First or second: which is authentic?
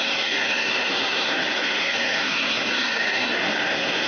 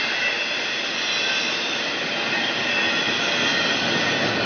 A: second